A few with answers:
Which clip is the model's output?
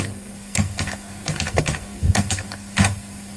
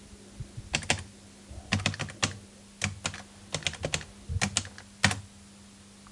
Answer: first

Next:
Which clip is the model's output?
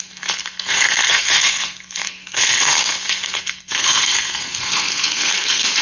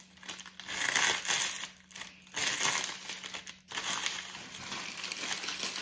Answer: first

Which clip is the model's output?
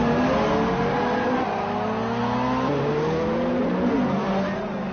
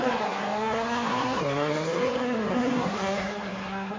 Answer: second